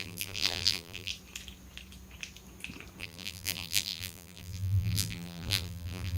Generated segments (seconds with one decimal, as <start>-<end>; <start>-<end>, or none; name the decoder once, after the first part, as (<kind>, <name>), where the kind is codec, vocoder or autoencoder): 0.0-1.1 (vocoder, BigVGAN v2); 3.0-6.2